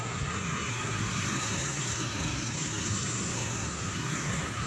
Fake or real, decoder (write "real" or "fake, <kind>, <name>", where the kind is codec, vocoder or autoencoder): fake, codec, SNAC